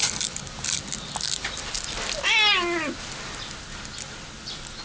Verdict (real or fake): real